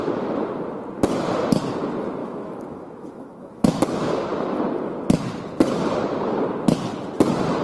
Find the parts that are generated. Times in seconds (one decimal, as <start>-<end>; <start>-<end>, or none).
2.2-3.8